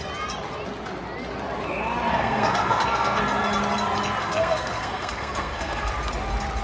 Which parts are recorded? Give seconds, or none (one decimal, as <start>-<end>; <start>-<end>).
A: 0.0-2.1; 3.2-4.2; 5.9-6.6